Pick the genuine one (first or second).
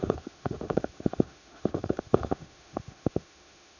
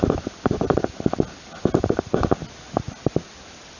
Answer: second